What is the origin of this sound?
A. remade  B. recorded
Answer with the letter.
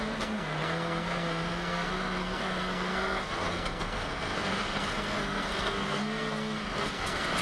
A